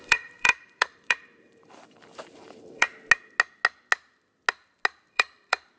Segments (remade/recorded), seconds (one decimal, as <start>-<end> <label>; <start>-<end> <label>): 0.0-2.9 remade; 2.9-5.1 recorded; 5.1-5.8 remade